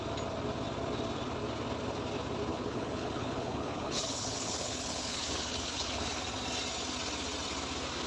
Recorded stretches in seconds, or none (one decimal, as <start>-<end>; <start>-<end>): 0.0-2.5; 6.2-8.1